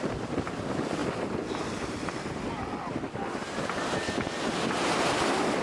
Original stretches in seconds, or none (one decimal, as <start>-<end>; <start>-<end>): 0.0-5.6